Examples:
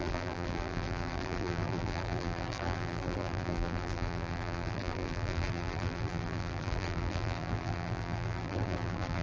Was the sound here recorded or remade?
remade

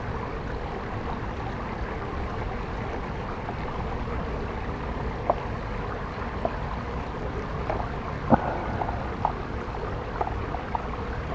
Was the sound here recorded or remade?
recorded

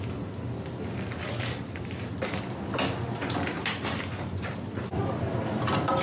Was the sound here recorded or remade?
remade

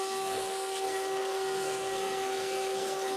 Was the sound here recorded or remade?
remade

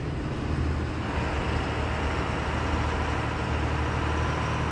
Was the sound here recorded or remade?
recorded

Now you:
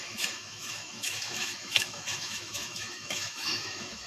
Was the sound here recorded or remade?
remade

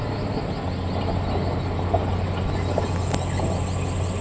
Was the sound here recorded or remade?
recorded